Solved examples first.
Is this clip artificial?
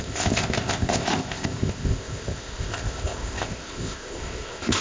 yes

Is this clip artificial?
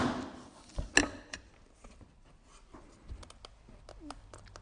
no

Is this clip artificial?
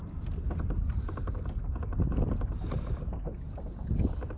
no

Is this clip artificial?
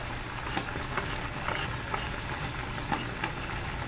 no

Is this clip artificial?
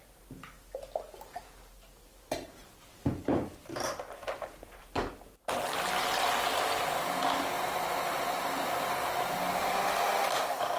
no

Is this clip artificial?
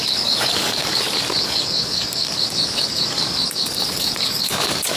yes